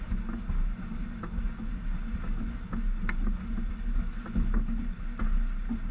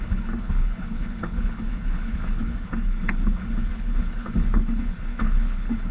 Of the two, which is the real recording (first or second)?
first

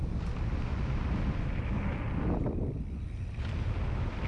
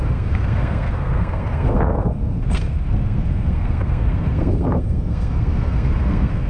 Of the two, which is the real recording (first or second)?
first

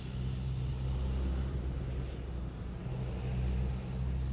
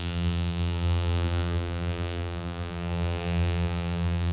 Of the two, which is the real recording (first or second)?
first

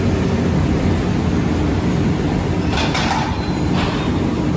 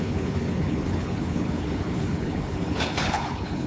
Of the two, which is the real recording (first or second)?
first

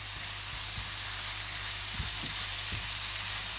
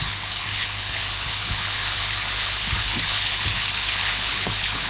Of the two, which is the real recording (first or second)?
first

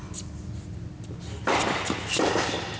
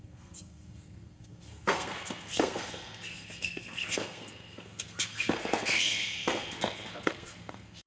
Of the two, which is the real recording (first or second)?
first